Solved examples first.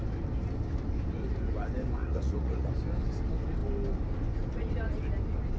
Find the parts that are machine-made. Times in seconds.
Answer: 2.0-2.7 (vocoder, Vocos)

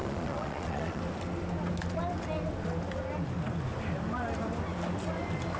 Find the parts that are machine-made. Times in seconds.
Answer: 0.0-1.0 (vocoder, Vocos)